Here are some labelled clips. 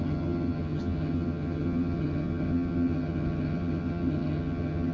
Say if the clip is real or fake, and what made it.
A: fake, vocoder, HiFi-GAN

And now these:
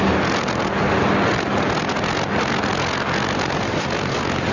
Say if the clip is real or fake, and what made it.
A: real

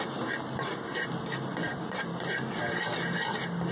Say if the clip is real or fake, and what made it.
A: real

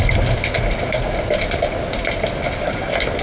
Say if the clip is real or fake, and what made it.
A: real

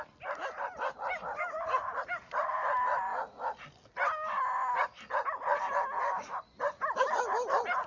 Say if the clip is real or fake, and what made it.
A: real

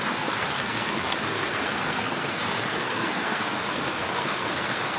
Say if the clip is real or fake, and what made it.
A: fake, codec, SNAC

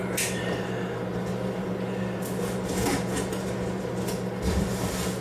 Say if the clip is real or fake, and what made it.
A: real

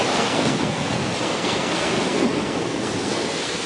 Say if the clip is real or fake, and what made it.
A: fake, codec, SNAC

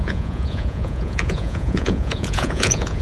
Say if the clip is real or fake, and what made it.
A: fake, vocoder, Vocos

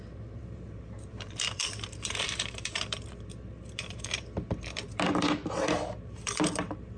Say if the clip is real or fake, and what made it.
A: fake, vocoder, BigVGAN v2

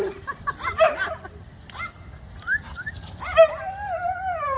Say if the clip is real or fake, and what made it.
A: fake, vocoder, BigVGAN v2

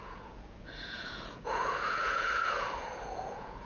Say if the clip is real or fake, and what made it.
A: fake, vocoder, Vocos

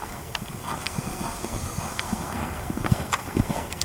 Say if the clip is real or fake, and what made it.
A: fake, codec, SNAC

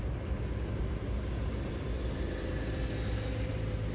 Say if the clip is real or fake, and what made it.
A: real